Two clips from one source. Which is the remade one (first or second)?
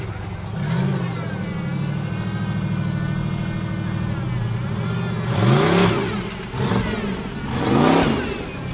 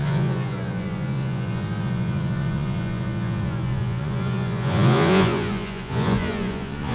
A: second